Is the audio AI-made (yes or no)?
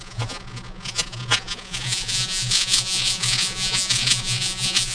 yes